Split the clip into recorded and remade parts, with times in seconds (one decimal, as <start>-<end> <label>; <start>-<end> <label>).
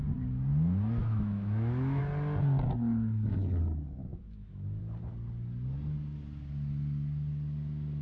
0.0-1.0 recorded; 1.0-2.0 remade; 2.0-4.1 recorded; 4.1-4.8 remade; 4.8-8.0 recorded